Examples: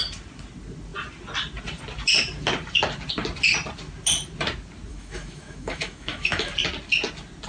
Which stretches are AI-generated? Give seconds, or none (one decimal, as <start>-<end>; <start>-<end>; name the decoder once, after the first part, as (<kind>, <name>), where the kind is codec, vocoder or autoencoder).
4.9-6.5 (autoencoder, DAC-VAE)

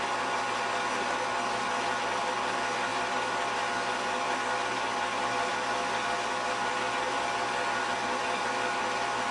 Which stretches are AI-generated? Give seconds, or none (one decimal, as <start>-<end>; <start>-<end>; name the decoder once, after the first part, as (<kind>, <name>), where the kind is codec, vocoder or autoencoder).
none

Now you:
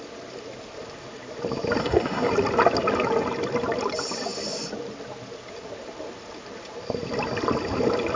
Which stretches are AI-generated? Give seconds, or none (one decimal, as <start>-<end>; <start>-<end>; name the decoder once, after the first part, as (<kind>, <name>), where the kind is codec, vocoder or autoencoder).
1.8-2.3 (codec, SNAC)

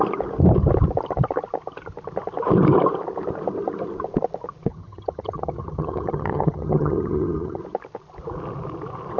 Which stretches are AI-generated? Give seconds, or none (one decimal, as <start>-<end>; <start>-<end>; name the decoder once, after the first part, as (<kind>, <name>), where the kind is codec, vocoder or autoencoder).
4.7-7.6 (vocoder, HiFi-GAN)